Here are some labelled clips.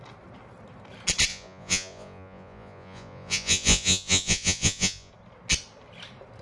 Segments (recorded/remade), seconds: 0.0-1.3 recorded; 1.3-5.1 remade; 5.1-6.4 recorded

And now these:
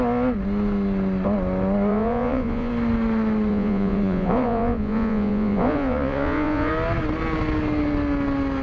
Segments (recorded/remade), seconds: 0.0-1.9 recorded; 1.9-2.7 remade; 2.7-3.5 recorded; 3.5-6.7 remade; 6.7-8.6 recorded

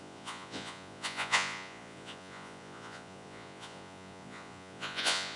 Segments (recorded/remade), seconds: 0.0-5.4 remade

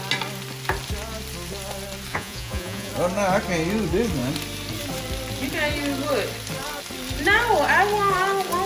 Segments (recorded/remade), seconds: 0.0-2.1 recorded; 2.1-2.9 remade; 2.9-8.7 recorded